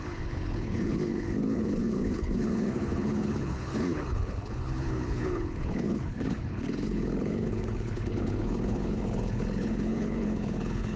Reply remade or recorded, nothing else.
remade